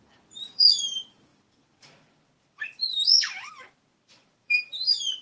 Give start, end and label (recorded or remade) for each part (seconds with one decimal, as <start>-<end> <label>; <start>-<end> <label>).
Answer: 0.0-5.2 remade